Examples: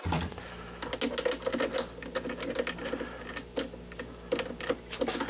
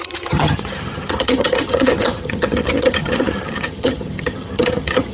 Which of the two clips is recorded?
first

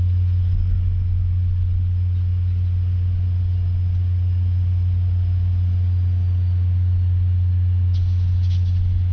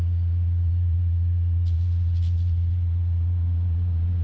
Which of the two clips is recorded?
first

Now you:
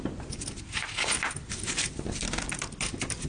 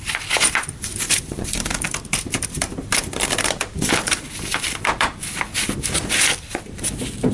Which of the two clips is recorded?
first